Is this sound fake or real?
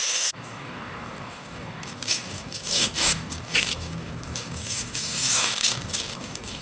fake